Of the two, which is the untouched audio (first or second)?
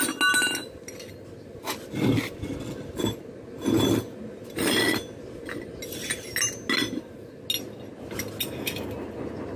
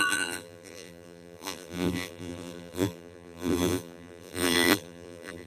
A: first